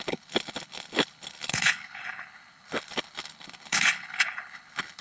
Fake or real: fake